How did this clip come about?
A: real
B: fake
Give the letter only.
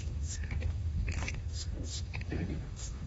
B